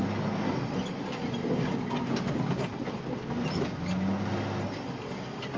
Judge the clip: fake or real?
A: real